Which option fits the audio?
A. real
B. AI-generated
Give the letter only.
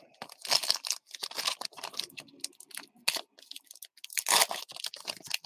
A